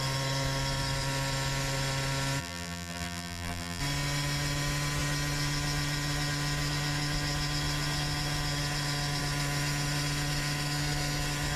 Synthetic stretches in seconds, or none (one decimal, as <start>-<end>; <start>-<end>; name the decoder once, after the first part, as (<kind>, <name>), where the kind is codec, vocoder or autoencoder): 2.4-3.8 (vocoder, BigVGAN v2)